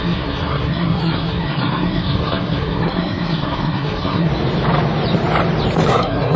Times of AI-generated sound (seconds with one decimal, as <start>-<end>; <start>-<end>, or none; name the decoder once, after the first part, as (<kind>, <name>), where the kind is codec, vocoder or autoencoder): 0.0-4.3 (codec, SNAC); 5.9-6.4